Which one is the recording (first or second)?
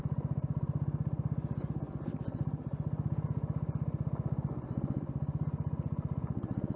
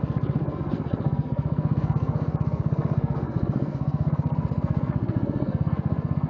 first